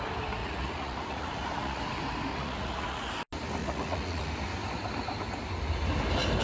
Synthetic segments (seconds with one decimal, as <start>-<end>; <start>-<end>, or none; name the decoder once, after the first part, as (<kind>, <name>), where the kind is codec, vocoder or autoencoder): 0.4-1.8 (vocoder, Vocos); 2.3-3.1; 3.6-4.3